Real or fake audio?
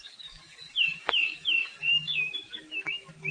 fake